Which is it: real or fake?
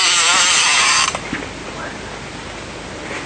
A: real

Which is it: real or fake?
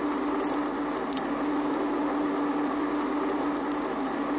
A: real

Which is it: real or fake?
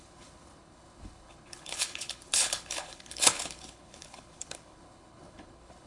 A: fake